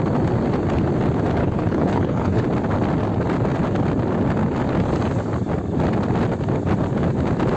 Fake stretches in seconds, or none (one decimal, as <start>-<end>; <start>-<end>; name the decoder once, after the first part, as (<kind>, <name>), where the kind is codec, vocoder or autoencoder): 1.4-2.4 (codec, HILCodec)